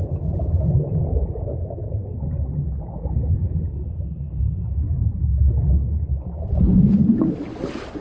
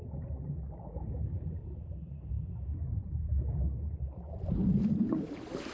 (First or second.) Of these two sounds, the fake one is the second